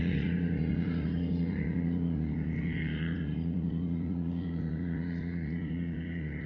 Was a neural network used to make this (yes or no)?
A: yes